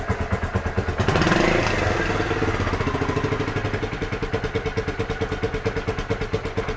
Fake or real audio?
real